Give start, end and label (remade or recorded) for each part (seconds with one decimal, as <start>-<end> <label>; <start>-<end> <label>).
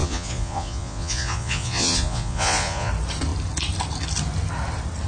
0.0-2.9 remade; 2.9-5.1 recorded